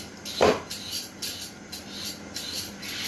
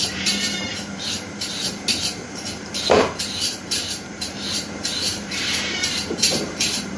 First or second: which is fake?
second